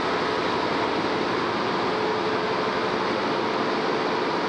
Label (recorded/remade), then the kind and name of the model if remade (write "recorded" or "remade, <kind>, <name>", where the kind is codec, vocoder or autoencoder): recorded